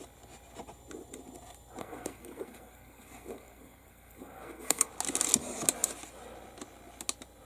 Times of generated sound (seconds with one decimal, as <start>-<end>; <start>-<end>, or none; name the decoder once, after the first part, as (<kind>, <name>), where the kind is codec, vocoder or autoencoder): 1.8-4.9 (codec, SNAC)